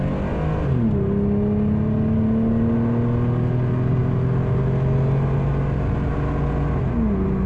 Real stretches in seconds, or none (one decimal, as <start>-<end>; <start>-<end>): 0.0-7.5